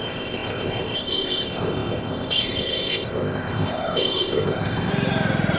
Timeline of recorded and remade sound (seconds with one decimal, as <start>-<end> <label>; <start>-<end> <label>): 0.0-4.9 remade; 4.9-5.6 recorded